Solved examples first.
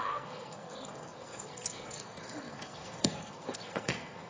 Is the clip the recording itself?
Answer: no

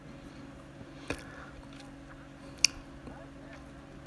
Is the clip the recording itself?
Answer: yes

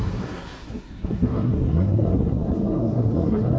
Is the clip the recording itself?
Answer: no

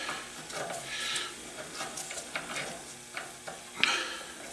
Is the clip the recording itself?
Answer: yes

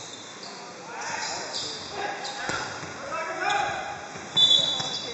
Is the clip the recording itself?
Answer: yes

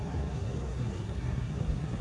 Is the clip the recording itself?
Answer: no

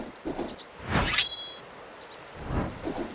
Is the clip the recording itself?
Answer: yes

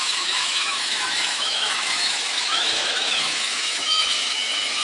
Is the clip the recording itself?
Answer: no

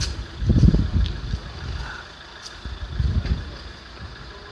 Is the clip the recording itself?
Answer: no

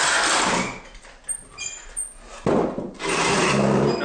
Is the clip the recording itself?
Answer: yes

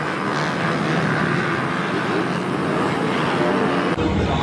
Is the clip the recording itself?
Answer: yes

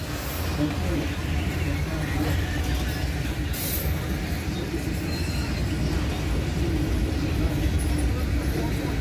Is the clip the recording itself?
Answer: yes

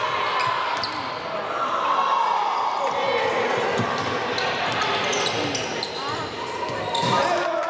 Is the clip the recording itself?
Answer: yes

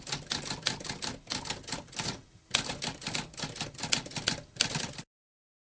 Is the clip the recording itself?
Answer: yes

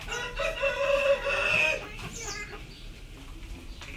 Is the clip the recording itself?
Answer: yes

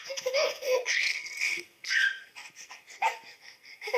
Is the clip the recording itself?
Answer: no